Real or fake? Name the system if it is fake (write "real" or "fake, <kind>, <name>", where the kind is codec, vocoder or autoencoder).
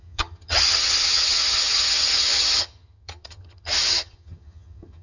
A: fake, vocoder, HiFi-GAN